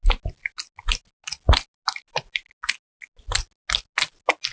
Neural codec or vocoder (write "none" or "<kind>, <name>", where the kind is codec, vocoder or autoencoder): none